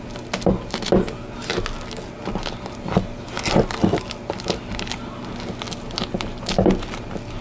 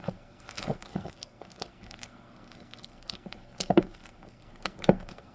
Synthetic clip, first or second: second